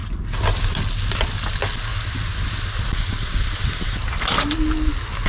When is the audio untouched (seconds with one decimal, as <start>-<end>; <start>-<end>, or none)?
0.0-5.3